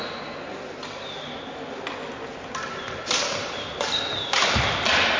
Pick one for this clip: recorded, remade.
recorded